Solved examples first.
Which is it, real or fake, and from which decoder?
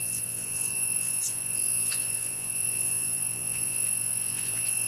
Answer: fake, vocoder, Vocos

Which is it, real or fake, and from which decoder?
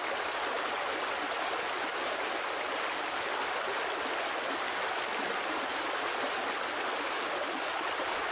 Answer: real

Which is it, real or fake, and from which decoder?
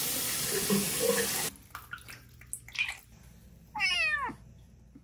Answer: real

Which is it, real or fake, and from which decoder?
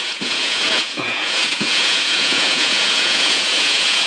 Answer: fake, vocoder, Vocos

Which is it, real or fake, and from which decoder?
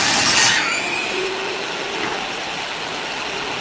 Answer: real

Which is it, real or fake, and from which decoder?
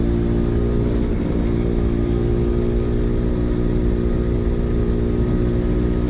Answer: real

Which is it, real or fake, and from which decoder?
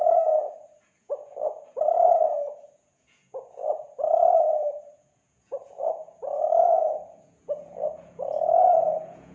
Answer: fake, vocoder, Vocos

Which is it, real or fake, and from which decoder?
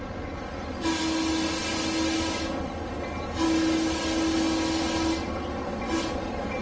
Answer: real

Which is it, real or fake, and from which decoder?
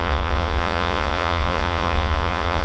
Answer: fake, vocoder, Vocos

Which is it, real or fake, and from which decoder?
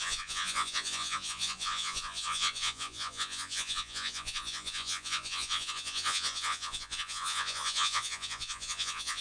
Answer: fake, vocoder, Vocos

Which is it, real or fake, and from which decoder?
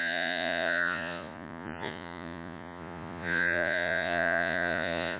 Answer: fake, vocoder, Vocos